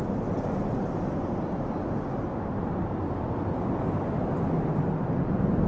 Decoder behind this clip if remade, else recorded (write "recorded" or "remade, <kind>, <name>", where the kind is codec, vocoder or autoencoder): recorded